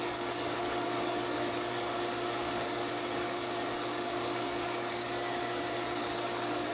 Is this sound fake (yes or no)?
yes